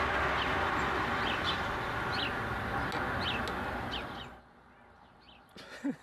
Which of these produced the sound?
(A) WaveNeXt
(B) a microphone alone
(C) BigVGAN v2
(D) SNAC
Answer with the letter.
B